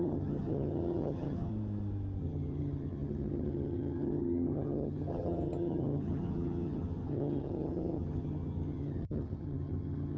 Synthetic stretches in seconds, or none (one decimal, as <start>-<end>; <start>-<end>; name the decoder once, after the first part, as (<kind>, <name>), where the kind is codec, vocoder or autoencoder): 0.0-1.5 (vocoder, HiFi-GAN); 2.2-10.2